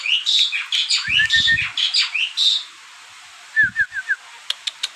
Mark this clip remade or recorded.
recorded